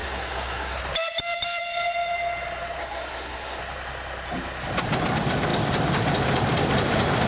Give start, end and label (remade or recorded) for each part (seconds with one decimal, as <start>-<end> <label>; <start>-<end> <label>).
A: 0.0-0.8 remade; 0.8-2.8 recorded; 2.8-3.6 remade; 3.6-7.3 recorded